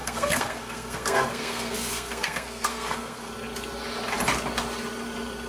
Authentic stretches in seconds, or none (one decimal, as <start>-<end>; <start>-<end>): 3.3-5.5